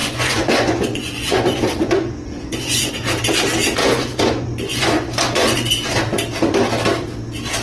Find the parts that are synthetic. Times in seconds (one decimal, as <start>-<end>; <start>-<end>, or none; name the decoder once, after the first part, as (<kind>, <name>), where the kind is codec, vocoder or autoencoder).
0.0-2.9 (vocoder, Vocos); 3.8-5.7